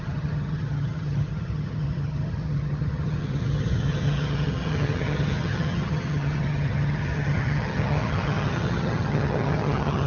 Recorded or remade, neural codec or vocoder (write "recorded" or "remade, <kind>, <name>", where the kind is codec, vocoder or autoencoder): remade, vocoder, HiFi-GAN